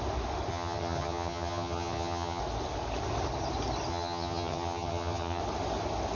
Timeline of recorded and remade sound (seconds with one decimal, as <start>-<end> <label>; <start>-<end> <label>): 0.0-0.5 recorded; 0.5-2.4 remade; 2.4-3.9 recorded; 3.9-5.4 remade; 5.4-6.1 recorded